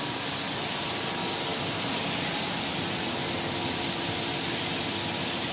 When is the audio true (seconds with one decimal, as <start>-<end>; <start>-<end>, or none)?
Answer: 0.0-5.5

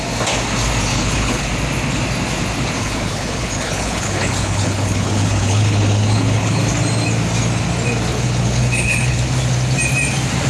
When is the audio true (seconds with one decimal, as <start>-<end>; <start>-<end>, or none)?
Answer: 0.0-0.9; 1.5-2.8; 6.6-8.1; 9.2-10.5